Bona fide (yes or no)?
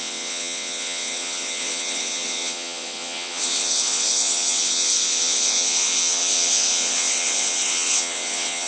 no